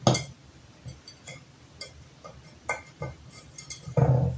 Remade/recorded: recorded